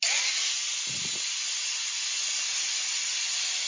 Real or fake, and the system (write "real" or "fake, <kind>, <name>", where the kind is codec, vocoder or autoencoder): real